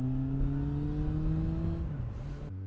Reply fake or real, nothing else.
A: real